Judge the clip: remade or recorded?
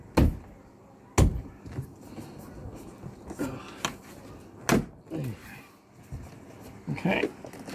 recorded